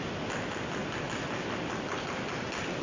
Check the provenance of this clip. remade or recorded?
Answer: recorded